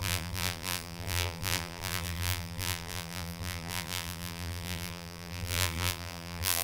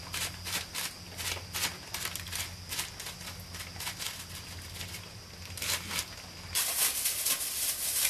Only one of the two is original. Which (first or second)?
second